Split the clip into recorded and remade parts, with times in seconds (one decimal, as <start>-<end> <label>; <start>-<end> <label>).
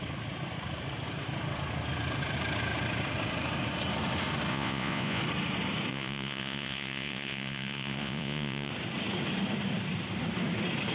0.0-4.5 recorded; 4.5-5.2 remade; 5.2-5.9 recorded; 5.9-8.7 remade; 8.7-10.9 recorded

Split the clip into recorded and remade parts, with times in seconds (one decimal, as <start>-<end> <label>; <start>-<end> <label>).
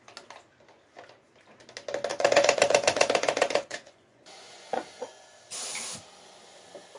0.0-2.1 recorded; 2.1-5.4 remade; 5.4-7.0 recorded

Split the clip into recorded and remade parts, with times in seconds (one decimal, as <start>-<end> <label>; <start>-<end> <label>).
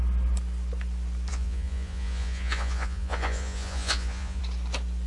0.0-1.3 recorded; 1.3-4.4 remade; 4.4-5.1 recorded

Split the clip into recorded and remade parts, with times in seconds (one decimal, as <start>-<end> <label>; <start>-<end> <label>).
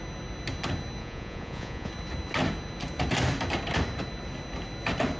0.0-1.0 recorded; 1.0-1.9 remade; 1.9-5.2 recorded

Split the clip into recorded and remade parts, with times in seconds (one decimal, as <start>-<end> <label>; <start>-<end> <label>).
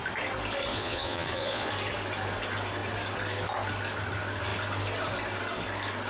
0.0-0.7 recorded; 0.7-1.7 remade; 1.7-6.1 recorded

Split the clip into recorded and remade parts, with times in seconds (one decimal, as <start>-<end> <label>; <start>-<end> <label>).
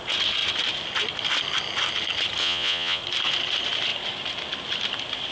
0.0-2.4 recorded; 2.4-3.0 remade; 3.0-5.3 recorded